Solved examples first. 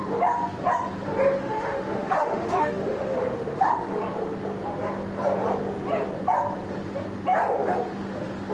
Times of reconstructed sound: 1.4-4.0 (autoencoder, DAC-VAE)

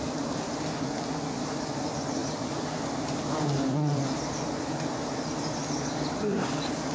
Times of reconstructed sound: 2.2-4.7 (vocoder, BigVGAN v2)

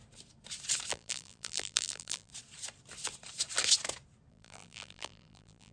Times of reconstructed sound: 0.9-2.3 (vocoder, BigVGAN v2); 4.3-5.7

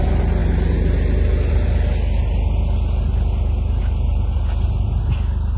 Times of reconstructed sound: none

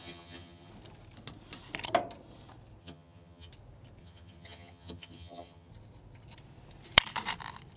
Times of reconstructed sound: 0.0-0.7 (vocoder, HiFi-GAN); 2.8-3.5; 4.0-5.7

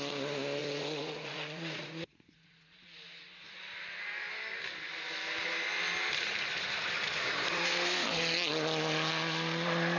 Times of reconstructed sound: 0.6-2.6 (vocoder, Vocos)

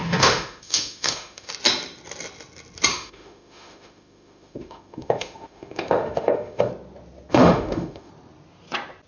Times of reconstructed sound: 0.0-1.5 (autoencoder, DAC-VAE); 2.9-6.7; 7.3-8.1

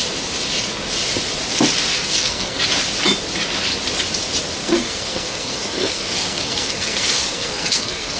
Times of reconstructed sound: 1.9-2.6 (codec, SNAC); 4.6-8.2